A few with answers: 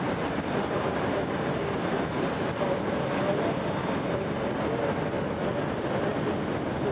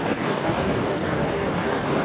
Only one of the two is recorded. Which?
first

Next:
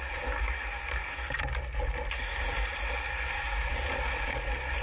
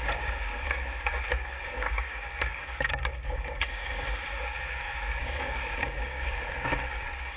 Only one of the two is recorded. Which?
first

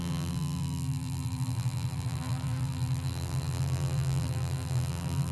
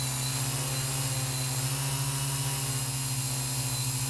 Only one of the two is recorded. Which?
second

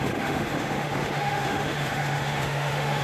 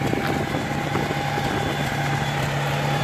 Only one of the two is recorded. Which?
second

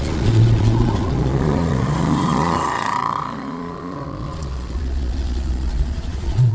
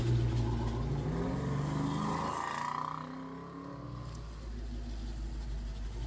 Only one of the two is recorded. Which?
second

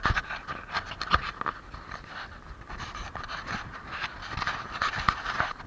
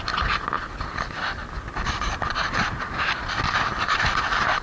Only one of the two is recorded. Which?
second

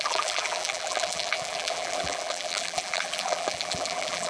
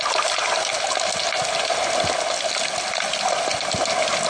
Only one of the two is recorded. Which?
second